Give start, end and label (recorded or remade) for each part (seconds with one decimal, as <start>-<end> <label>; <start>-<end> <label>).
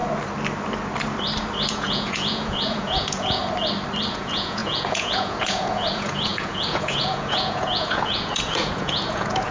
0.0-1.7 recorded; 1.7-3.4 remade; 3.4-4.1 recorded; 4.1-9.5 remade